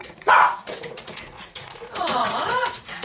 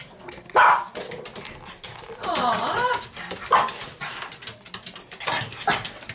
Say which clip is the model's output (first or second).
first